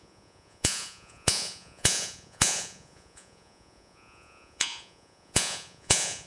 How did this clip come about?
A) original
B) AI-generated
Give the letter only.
B